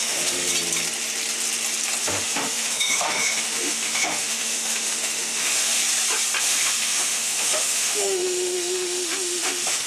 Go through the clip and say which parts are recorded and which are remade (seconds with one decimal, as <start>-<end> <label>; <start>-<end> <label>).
0.0-0.5 remade; 0.5-2.0 recorded; 2.0-5.8 remade; 5.8-6.4 recorded; 6.4-9.9 remade